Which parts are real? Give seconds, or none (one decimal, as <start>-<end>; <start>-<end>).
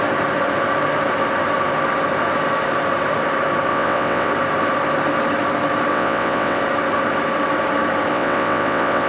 0.0-3.7; 4.3-5.9; 6.6-8.1